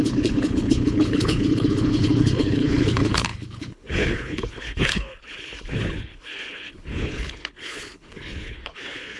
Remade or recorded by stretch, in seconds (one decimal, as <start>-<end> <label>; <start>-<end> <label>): 0.0-9.2 remade